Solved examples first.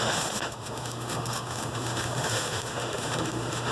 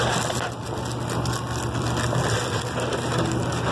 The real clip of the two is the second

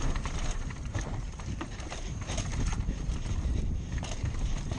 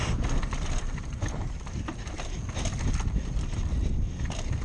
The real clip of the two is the second